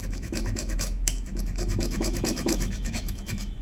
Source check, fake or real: fake